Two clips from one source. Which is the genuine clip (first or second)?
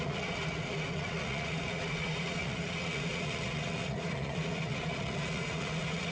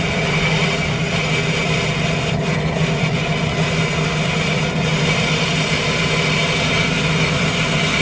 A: second